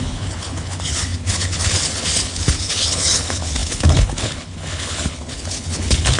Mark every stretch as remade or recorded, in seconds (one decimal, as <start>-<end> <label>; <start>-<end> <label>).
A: 0.0-6.2 remade